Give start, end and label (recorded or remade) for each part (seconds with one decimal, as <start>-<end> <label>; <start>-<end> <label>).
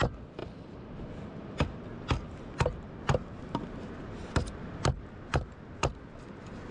0.0-6.7 recorded